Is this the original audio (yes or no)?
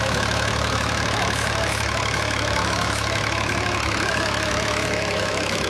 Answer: no